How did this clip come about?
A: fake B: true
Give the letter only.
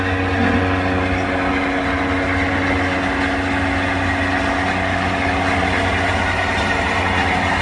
B